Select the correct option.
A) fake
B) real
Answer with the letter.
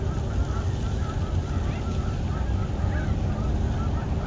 B